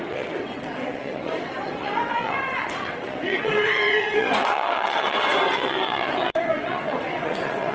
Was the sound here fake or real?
fake